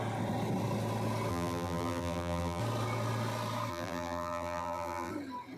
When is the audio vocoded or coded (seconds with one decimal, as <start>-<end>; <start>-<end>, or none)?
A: 1.3-2.6; 3.7-5.1